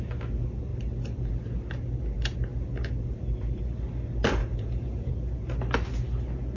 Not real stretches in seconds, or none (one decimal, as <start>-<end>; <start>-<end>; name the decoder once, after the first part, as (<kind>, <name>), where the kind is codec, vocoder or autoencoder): 4.4-5.1 (vocoder, Vocos)